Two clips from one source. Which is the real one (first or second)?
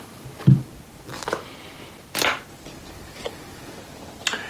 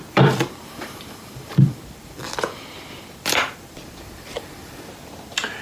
first